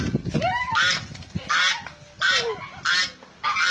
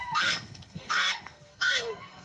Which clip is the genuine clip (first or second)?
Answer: first